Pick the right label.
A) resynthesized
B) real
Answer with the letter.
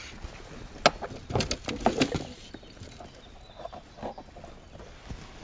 B